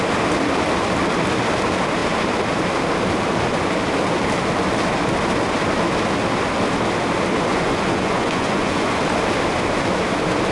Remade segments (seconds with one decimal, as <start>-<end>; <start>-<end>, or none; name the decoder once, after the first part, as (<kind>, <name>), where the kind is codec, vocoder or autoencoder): 7.5-9.0 (vocoder, Vocos)